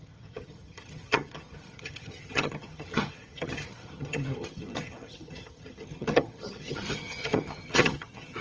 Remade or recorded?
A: remade